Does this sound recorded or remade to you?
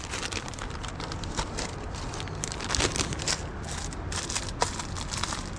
recorded